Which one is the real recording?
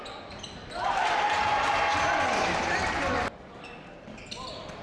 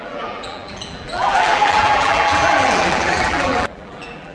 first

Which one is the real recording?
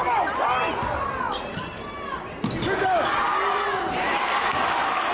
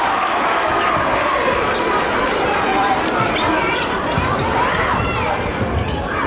first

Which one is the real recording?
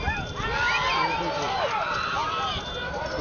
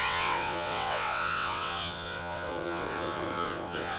first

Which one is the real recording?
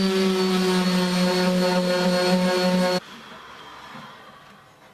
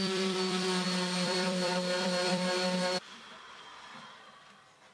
first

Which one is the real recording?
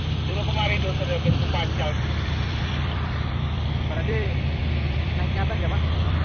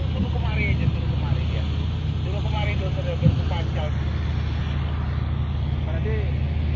second